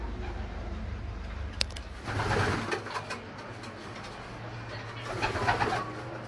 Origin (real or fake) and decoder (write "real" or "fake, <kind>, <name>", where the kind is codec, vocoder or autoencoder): real